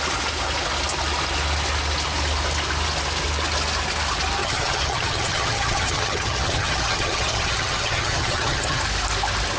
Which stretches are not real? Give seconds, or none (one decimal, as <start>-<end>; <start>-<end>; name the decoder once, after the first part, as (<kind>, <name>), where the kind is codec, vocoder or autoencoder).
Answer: 4.4-8.8 (vocoder, HiFi-GAN)